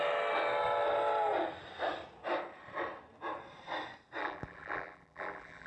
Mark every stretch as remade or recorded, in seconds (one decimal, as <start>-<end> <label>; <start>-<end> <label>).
0.0-4.2 recorded; 4.2-5.7 remade